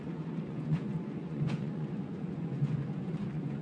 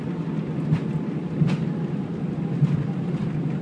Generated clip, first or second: first